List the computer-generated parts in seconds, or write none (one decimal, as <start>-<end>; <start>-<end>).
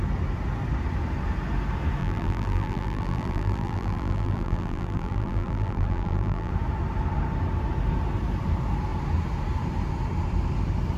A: 2.0-6.5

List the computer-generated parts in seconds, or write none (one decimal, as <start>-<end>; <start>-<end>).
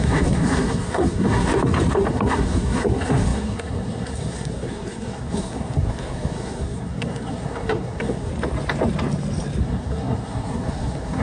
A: 0.0-1.5; 2.1-8.3; 9.6-11.2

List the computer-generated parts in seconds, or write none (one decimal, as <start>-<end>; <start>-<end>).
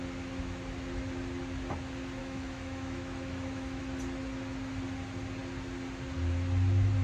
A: 2.2-3.8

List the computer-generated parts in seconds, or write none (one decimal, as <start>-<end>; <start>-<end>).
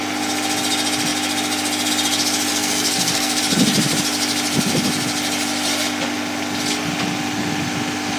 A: 2.5-3.4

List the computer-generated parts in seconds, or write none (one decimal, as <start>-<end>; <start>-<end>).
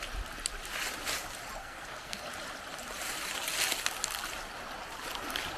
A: 1.6-2.2